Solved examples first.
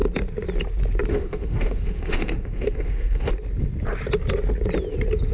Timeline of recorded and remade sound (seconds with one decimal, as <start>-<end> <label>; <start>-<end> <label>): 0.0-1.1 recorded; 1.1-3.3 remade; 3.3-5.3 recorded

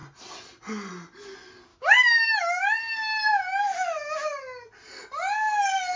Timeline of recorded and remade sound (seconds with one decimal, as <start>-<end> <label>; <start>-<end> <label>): 0.0-1.7 recorded; 1.7-2.8 remade; 2.8-3.5 recorded; 3.5-4.4 remade; 4.4-6.0 recorded

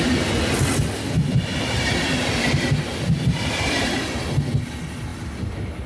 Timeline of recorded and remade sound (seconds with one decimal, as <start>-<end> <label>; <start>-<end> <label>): 0.0-5.9 recorded

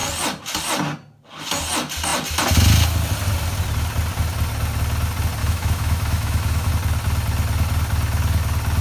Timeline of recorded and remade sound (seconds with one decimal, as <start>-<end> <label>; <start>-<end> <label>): 0.0-5.4 recorded; 5.4-6.7 remade; 6.7-8.8 recorded

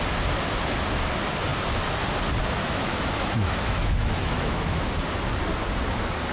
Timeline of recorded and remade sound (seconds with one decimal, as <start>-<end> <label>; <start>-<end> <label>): 0.0-2.6 recorded; 2.6-4.8 remade; 4.8-6.3 recorded